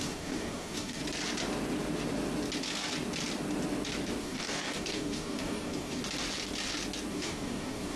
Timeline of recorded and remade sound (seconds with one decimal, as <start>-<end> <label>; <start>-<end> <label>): 0.0-1.0 remade; 1.0-4.2 recorded; 4.2-6.0 remade; 6.0-7.1 recorded; 7.1-8.0 remade